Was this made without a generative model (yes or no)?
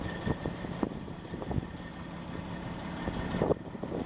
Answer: yes